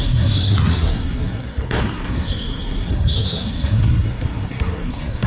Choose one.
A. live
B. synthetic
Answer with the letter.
B